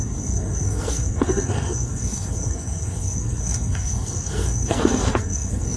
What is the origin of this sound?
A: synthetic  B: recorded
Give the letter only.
A